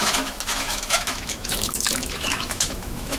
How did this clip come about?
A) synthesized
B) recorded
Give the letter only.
A